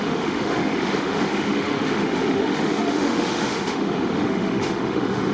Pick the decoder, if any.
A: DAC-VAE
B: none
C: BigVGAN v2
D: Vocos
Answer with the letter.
A